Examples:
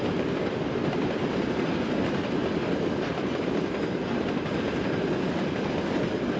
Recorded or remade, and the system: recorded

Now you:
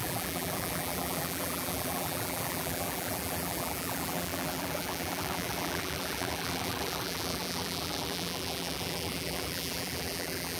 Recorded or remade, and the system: remade, vocoder, BigVGAN v2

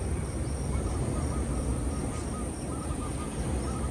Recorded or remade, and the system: recorded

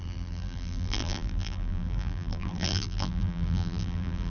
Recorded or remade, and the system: remade, vocoder, BigVGAN v2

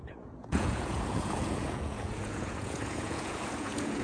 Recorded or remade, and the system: remade, vocoder, Vocos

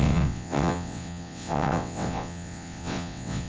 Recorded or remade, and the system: remade, vocoder, WaveNeXt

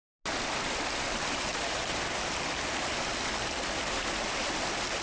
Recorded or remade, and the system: recorded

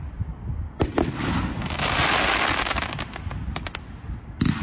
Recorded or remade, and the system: recorded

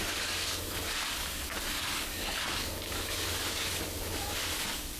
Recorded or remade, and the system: remade, codec, DAC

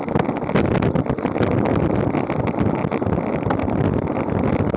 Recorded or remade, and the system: recorded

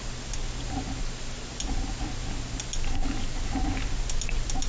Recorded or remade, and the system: recorded